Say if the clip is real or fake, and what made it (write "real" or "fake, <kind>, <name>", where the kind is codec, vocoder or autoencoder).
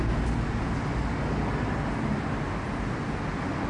real